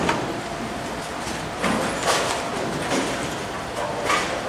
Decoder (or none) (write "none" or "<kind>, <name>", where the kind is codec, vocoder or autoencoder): none